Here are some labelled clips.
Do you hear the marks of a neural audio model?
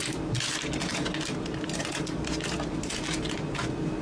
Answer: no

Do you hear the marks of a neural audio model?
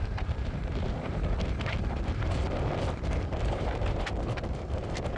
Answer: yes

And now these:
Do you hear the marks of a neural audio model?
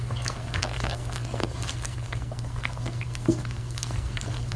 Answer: yes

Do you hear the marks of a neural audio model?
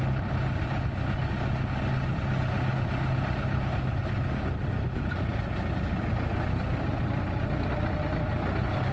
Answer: no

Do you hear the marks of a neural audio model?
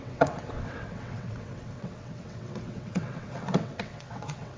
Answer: yes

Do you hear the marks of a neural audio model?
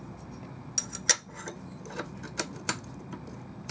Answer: no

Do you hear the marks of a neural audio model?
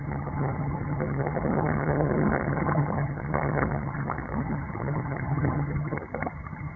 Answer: yes